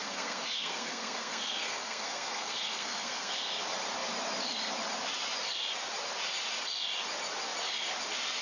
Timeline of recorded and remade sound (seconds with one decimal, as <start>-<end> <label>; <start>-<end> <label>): 0.0-3.5 remade; 3.5-8.4 recorded